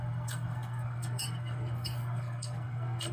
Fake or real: fake